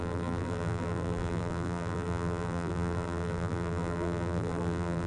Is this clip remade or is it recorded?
remade